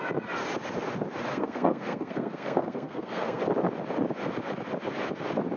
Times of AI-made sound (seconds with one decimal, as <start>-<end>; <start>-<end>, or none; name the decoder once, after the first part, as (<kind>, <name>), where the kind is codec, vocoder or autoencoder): 1.3-3.4 (codec, SNAC)